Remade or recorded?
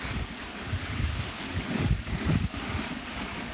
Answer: remade